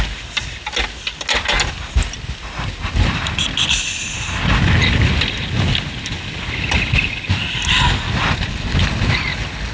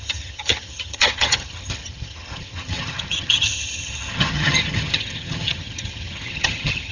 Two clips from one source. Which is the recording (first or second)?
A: first